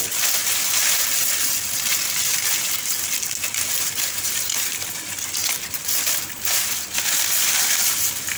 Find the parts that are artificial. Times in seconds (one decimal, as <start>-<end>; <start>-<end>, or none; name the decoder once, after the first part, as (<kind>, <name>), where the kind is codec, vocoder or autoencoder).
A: none